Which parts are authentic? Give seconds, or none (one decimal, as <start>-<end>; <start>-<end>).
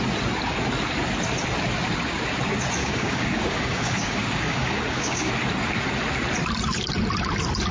0.0-2.8; 5.3-7.7